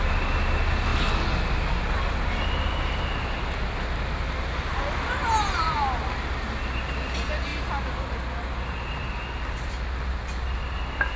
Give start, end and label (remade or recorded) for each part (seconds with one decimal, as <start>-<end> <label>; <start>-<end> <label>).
0.0-11.2 recorded